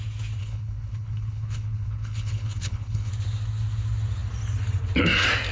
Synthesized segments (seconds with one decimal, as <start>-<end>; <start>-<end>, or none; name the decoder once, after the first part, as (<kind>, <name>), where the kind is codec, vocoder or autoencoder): 0.4-3.1 (codec, HILCodec)